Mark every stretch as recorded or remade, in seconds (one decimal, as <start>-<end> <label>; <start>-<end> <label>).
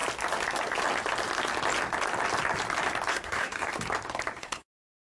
0.0-3.1 recorded; 3.1-3.7 remade; 3.7-4.4 recorded; 4.4-5.2 remade